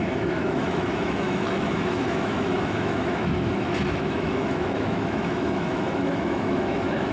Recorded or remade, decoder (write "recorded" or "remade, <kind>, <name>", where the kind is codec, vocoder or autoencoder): remade, autoencoder, DAC-VAE